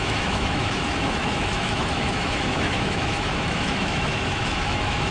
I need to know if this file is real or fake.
fake